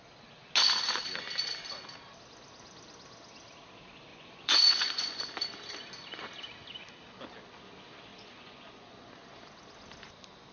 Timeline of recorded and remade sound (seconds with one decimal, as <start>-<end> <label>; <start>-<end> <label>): 0.0-4.1 recorded; 4.1-5.3 remade; 5.3-8.1 recorded; 8.1-9.2 remade; 9.2-10.5 recorded